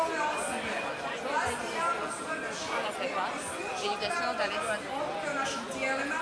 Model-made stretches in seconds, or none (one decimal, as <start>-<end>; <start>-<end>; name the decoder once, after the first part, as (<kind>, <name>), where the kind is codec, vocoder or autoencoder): none